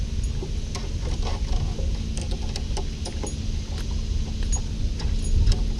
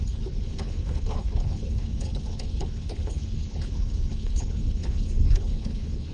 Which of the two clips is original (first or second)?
first